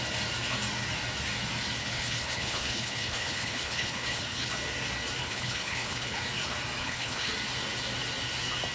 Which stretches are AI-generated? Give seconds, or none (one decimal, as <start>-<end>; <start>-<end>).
1.8-4.5; 5.2-6.2; 6.8-7.3